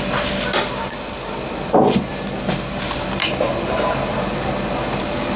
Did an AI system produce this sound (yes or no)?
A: no